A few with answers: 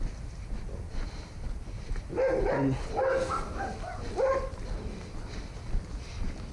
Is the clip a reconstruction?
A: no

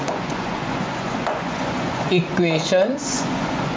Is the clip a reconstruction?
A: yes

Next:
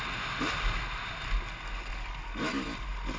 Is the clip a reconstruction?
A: no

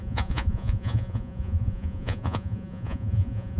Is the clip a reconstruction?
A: yes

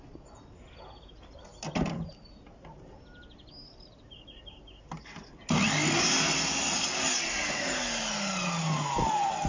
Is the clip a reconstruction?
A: no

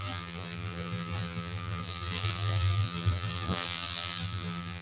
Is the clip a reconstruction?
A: yes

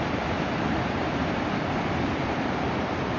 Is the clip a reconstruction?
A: no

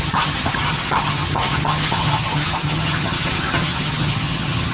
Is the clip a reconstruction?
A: yes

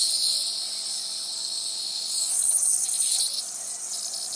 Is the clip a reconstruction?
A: no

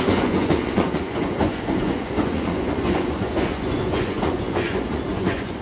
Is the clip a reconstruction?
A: yes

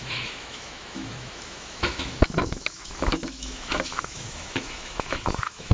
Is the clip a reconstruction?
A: yes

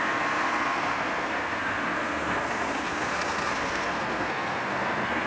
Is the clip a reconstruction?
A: yes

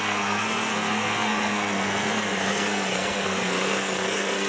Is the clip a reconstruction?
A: yes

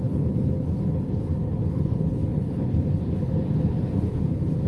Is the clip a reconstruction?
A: yes